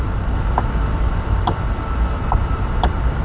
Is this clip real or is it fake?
real